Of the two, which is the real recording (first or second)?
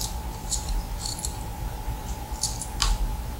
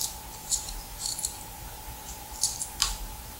first